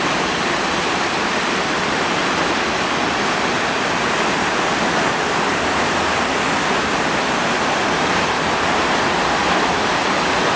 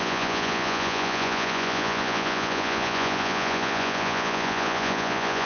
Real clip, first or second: first